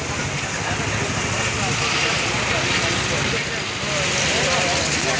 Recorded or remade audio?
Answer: recorded